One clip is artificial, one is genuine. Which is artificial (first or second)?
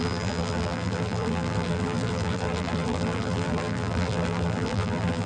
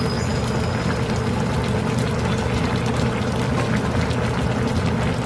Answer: first